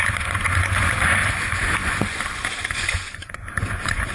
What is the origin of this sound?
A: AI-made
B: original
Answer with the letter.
A